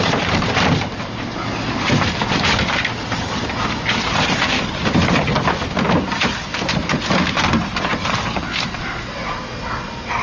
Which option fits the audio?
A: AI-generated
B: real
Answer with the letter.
B